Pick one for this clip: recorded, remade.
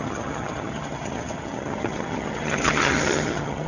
remade